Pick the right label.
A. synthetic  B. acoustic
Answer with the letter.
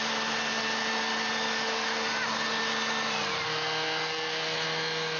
B